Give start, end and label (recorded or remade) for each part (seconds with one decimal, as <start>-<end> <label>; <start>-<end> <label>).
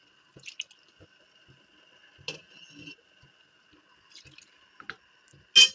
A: 0.0-5.7 recorded